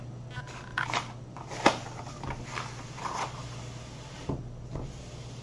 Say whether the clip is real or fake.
real